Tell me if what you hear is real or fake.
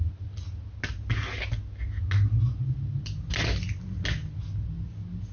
real